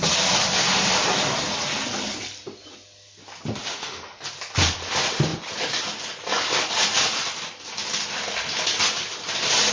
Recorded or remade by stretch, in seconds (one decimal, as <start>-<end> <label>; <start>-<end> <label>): 0.0-3.6 recorded; 3.6-4.2 remade; 4.2-9.7 recorded